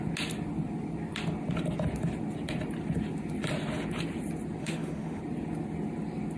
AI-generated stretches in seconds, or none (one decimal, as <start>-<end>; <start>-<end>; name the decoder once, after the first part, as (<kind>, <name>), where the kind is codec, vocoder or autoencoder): 4.6-5.2 (autoencoder, DAC-VAE)